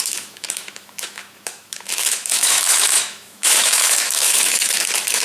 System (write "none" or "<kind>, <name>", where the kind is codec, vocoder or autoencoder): autoencoder, DAC-VAE